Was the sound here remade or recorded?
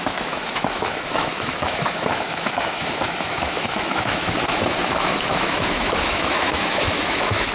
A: remade